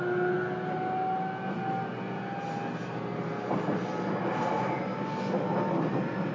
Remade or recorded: recorded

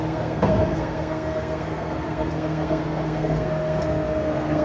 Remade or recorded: remade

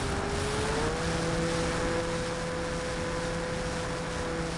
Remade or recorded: recorded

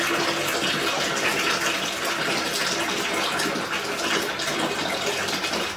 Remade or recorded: recorded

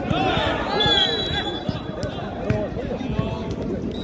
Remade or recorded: recorded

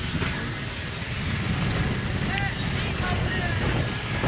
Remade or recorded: recorded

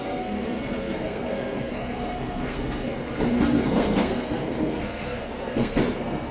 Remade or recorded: remade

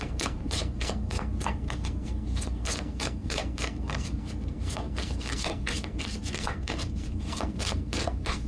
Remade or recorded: remade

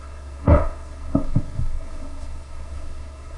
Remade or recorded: remade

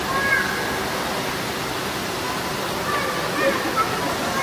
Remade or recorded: recorded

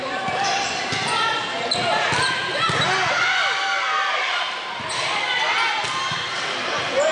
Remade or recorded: recorded